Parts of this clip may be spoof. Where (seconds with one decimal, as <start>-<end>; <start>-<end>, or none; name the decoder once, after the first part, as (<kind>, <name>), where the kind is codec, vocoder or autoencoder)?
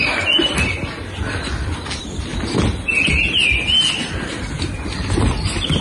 0.0-2.3 (vocoder, BigVGAN v2); 3.9-5.8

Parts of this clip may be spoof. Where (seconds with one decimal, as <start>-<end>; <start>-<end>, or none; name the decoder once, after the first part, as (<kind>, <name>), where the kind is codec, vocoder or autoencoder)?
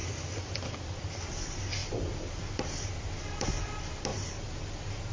0.0-1.1 (vocoder, BigVGAN v2); 1.8-3.2; 4.1-5.1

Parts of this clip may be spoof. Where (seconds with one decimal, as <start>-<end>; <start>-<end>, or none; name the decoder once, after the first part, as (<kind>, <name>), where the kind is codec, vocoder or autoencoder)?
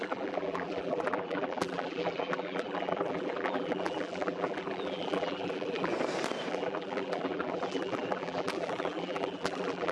0.0-5.9 (vocoder, BigVGAN v2); 6.5-9.9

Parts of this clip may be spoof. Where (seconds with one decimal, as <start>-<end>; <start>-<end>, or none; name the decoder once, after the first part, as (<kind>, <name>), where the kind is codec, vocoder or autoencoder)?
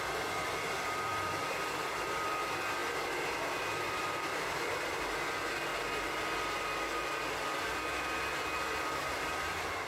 0.0-2.8 (vocoder, BigVGAN v2); 3.5-5.7; 9.1-9.9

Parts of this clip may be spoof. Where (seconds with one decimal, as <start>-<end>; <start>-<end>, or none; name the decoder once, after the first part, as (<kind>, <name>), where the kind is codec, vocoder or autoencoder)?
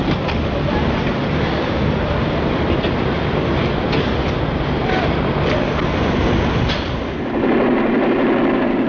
0.0-3.6 (vocoder, BigVGAN v2)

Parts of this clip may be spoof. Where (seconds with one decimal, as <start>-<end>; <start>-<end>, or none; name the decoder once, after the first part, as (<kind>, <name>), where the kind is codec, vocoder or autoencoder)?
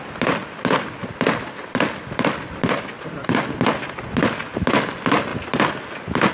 1.0-2.5 (vocoder, BigVGAN v2)